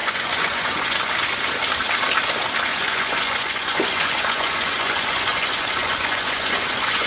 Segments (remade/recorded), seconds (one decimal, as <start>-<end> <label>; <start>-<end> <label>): 0.0-1.1 remade; 1.1-2.7 recorded; 2.7-7.1 remade